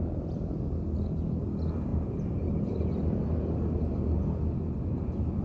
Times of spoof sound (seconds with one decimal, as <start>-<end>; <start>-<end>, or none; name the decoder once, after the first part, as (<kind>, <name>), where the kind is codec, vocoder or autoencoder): 1.9-2.9 (vocoder, BigVGAN v2)